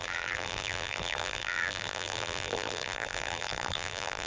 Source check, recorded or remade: remade